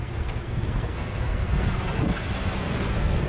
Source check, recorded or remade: remade